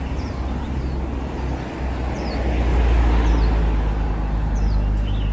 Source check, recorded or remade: recorded